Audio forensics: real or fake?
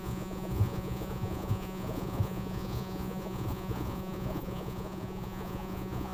fake